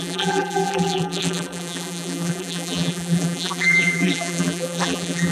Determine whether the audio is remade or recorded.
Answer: remade